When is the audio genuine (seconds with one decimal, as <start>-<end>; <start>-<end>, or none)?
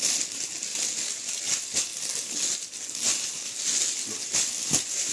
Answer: 0.0-5.1